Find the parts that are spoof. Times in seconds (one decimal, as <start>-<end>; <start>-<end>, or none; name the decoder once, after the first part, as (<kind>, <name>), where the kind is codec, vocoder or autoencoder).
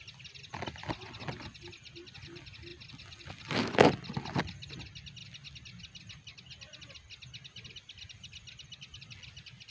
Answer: none